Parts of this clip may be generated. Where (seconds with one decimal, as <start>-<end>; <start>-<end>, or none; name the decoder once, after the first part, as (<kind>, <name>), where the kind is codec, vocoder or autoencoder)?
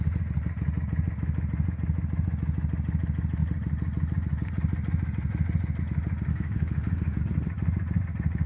6.3-7.2 (autoencoder, DAC-VAE)